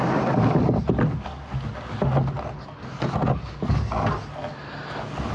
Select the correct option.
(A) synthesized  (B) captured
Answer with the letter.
B